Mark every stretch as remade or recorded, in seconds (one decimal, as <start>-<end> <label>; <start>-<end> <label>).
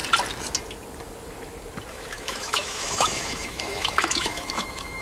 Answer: 0.0-1.9 recorded; 1.9-5.0 remade